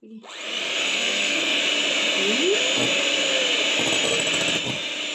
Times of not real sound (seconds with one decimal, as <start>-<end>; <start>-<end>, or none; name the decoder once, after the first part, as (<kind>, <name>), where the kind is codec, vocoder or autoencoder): 0.8-1.6 (codec, SNAC)